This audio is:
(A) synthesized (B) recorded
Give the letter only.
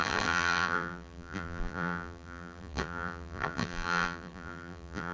A